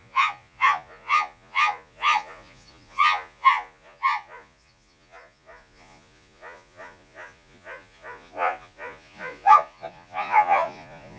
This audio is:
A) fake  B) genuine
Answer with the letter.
A